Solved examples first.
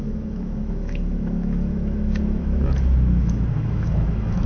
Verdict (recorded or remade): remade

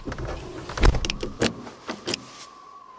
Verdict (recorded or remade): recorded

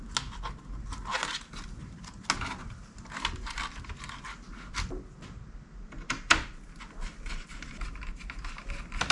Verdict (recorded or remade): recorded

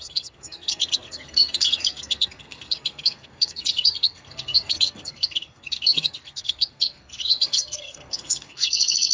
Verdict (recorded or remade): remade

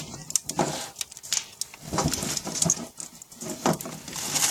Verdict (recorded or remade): recorded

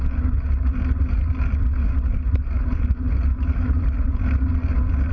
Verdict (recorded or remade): recorded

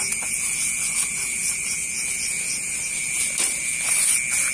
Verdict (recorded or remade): recorded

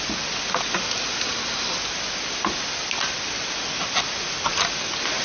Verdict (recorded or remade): recorded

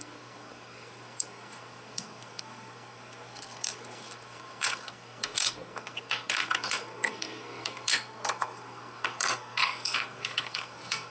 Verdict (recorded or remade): remade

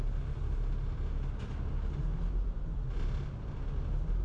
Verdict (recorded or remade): recorded